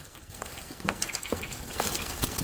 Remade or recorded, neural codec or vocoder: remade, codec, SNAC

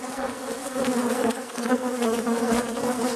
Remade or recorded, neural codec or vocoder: remade, codec, SNAC